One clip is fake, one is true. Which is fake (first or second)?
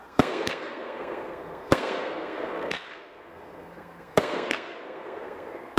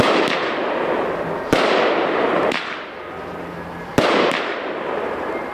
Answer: first